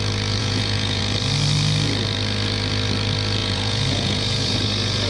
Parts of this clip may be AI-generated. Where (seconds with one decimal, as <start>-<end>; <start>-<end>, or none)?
0.4-1.0; 3.4-5.1